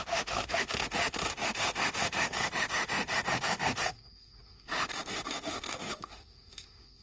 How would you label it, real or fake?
fake